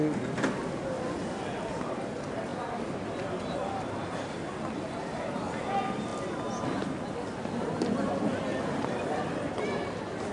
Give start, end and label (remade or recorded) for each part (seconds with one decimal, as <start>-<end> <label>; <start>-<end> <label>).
0.0-10.3 recorded